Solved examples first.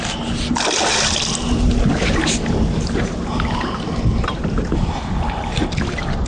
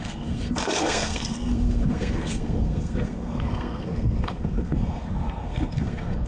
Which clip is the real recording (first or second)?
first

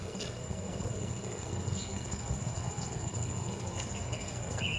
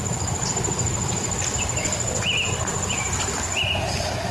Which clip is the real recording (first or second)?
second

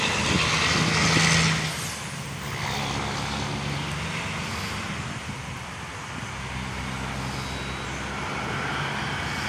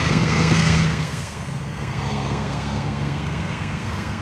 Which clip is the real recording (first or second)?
first